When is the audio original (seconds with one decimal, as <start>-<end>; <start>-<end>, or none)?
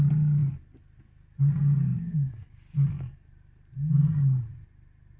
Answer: 0.0-5.2